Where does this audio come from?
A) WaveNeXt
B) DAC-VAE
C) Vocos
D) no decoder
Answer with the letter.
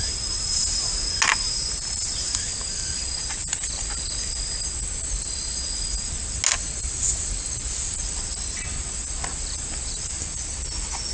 D